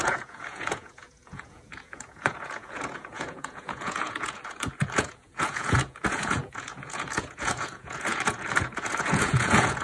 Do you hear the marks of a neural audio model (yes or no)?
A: yes